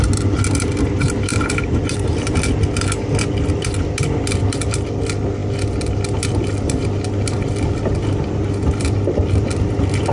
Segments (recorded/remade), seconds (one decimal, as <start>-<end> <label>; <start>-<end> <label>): 0.0-1.3 recorded; 1.3-2.4 remade; 2.4-10.1 recorded